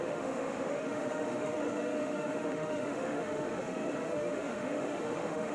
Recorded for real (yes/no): no